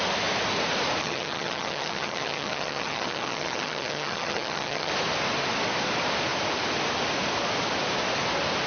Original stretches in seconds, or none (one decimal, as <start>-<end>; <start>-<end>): 0.0-1.0; 4.9-8.7